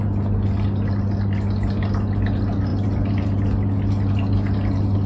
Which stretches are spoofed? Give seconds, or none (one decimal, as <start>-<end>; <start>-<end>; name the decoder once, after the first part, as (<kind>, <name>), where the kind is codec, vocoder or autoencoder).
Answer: none